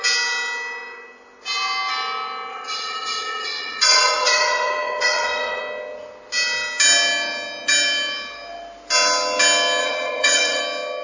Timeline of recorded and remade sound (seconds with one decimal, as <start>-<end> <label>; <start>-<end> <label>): 0.0-2.5 recorded; 2.5-5.6 remade; 5.6-9.8 recorded; 9.8-10.6 remade; 10.6-11.0 recorded